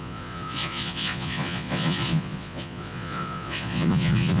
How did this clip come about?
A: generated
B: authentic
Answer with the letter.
A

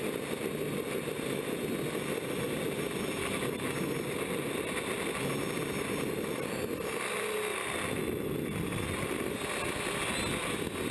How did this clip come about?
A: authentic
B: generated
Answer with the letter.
A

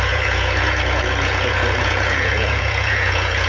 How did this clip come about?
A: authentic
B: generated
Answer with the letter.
B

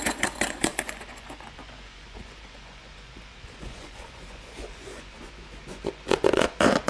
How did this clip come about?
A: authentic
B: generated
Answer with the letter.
B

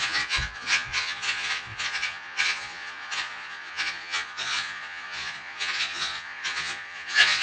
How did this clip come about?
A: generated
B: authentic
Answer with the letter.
A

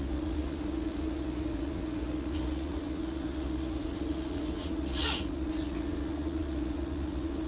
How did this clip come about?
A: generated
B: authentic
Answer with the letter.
A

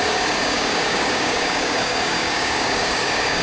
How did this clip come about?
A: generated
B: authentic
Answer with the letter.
A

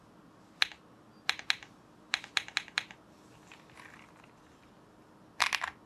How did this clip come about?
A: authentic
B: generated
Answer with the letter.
A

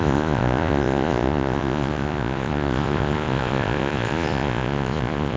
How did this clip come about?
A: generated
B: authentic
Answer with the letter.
A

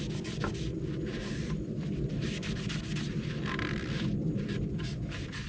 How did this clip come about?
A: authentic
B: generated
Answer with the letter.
B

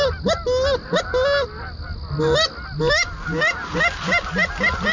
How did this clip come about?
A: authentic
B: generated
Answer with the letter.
A